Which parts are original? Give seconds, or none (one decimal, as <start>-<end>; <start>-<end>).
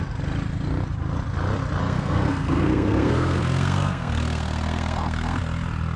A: 0.0-1.8; 5.4-6.0